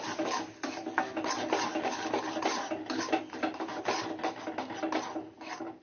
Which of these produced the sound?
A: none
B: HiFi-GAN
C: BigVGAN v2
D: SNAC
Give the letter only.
A